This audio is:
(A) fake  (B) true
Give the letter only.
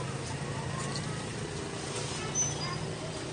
B